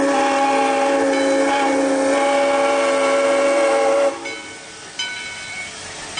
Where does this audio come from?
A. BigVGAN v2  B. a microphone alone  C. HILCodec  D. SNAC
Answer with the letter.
B